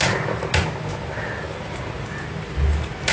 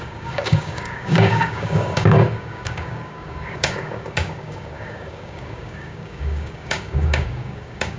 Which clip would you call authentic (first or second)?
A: first